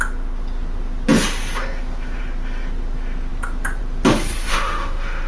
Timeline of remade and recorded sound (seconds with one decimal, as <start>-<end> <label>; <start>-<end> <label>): 0.0-4.5 recorded; 4.5-5.3 remade